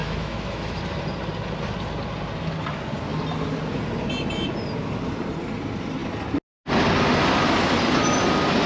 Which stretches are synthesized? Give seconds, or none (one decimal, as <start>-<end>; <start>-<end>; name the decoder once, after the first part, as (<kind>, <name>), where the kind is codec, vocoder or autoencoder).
0.0-0.8 (autoencoder, DAC-VAE)